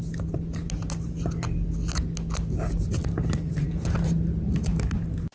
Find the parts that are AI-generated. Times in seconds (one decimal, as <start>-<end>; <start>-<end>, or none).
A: none